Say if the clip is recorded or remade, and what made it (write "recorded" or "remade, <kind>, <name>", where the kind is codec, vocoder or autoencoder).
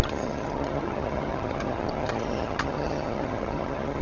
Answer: remade, vocoder, HiFi-GAN